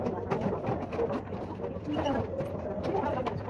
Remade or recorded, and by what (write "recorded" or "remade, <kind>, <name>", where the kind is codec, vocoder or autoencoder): recorded